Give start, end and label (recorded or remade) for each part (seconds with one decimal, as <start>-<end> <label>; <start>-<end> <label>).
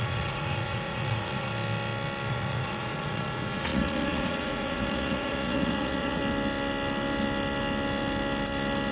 0.0-1.5 remade; 1.5-2.3 recorded; 2.3-6.2 remade; 6.2-8.9 recorded